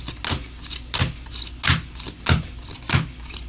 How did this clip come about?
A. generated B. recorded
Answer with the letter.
B